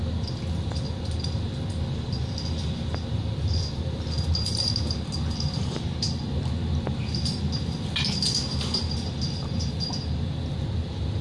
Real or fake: real